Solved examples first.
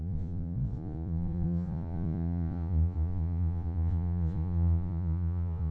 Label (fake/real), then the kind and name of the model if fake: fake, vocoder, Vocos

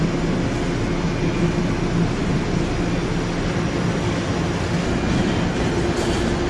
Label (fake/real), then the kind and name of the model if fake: real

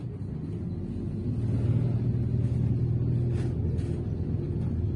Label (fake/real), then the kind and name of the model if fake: real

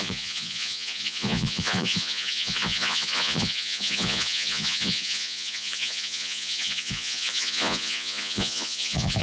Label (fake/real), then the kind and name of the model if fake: fake, vocoder, Vocos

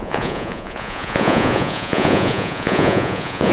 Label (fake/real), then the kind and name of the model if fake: fake, vocoder, Vocos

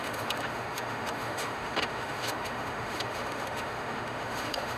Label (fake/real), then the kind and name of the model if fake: fake, autoencoder, DAC-VAE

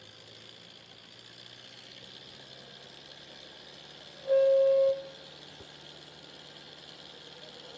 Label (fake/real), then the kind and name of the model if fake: real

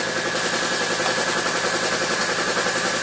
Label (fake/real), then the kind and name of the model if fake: real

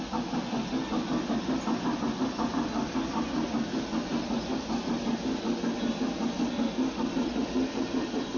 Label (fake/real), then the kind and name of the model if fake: real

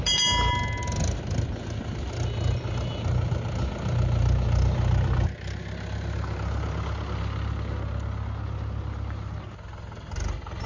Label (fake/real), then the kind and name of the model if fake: real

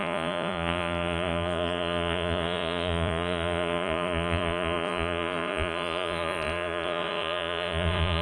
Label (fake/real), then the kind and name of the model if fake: fake, vocoder, Vocos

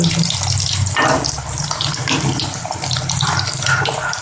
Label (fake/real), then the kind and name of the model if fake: fake, vocoder, BigVGAN v2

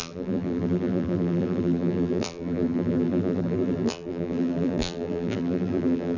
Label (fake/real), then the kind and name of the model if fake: fake, vocoder, BigVGAN v2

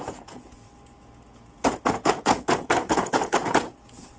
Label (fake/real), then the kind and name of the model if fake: fake, vocoder, Vocos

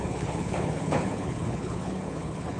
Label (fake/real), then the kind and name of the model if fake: fake, codec, HILCodec